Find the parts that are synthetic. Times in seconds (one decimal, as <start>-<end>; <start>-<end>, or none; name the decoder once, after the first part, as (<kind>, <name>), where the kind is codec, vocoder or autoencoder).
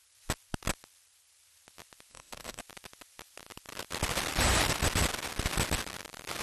2.1-2.6 (autoencoder, DAC-VAE)